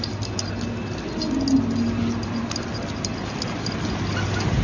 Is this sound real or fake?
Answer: real